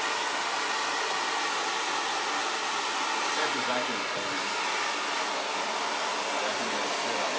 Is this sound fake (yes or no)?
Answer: no